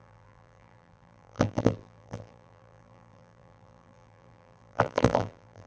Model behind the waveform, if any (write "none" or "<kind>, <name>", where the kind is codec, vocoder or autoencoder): vocoder, BigVGAN v2